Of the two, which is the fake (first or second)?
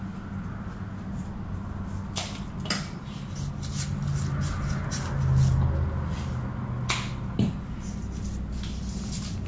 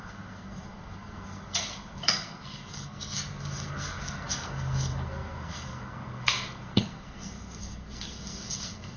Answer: second